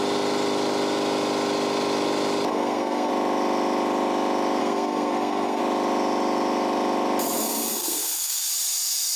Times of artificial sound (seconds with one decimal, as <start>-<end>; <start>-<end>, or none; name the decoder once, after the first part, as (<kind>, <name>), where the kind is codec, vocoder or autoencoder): 2.5-3.1 (codec, SNAC); 4.6-5.6; 7.4-8.5